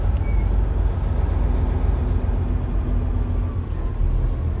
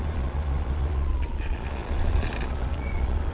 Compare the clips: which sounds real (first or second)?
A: first